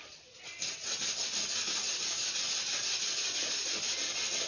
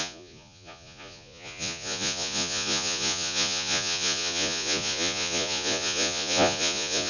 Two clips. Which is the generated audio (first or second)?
second